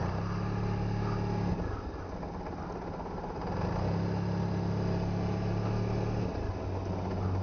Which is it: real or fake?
real